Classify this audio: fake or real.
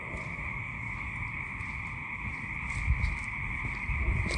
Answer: real